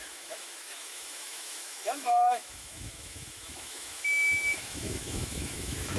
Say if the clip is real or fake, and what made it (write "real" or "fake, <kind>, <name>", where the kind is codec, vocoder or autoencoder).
fake, autoencoder, DAC-VAE